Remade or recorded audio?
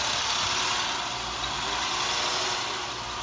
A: recorded